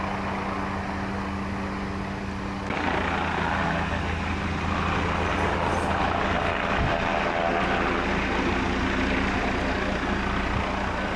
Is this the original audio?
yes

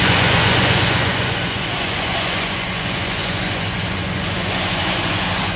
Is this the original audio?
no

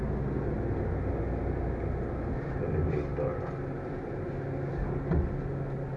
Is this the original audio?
yes